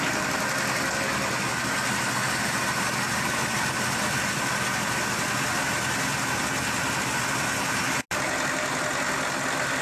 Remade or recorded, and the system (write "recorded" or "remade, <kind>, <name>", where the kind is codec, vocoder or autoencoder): recorded